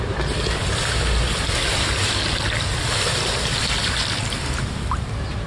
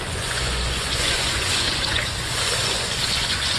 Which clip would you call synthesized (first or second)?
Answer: second